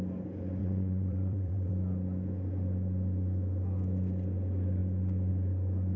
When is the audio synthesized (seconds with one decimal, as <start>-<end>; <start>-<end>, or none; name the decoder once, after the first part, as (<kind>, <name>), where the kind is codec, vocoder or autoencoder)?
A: 0.6-1.7 (vocoder, WaveNeXt)